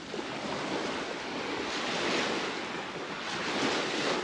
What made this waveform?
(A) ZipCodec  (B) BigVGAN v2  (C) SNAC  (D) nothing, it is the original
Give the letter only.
D